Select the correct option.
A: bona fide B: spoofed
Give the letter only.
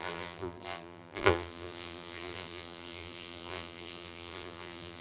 B